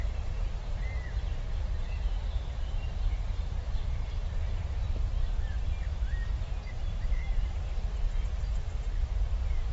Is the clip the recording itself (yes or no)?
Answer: no